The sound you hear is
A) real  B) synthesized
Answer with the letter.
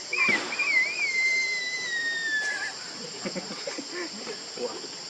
A